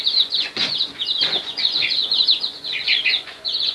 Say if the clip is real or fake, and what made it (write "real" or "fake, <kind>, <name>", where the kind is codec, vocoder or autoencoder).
fake, vocoder, Vocos